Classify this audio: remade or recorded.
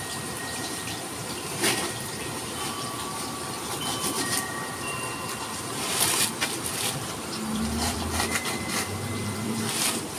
remade